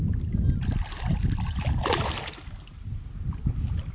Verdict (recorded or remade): recorded